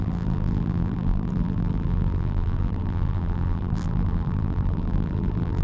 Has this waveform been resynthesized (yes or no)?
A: yes